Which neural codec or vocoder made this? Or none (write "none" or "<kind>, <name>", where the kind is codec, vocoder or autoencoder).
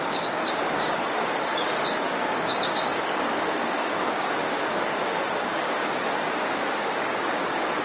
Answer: codec, DAC